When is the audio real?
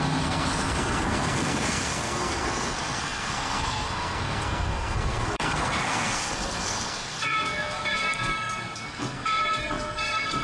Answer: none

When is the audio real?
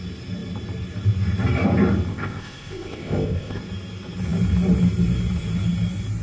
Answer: 0.0-2.1; 3.6-6.2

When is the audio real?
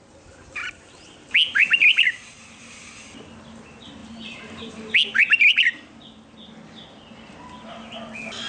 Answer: 0.0-0.6; 1.3-4.0; 4.7-8.5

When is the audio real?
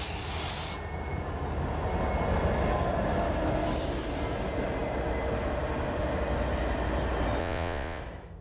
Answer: 0.0-7.4; 8.0-8.4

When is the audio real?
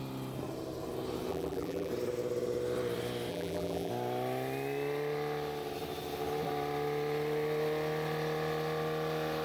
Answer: 0.0-1.3; 1.9-3.3; 3.9-9.4